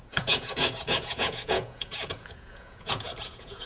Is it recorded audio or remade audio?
remade